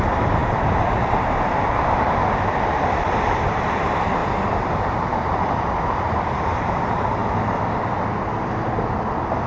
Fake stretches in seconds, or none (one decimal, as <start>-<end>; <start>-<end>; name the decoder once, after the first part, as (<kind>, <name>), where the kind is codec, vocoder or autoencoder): 0.0-9.5 (vocoder, BigVGAN v2)